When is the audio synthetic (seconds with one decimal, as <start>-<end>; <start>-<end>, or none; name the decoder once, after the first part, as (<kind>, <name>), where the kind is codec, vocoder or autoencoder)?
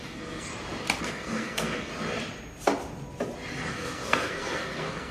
0.0-0.5 (codec, SNAC); 1.0-1.9; 3.7-5.1